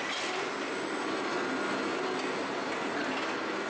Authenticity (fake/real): real